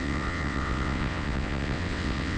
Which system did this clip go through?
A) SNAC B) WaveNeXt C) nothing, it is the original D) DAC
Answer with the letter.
B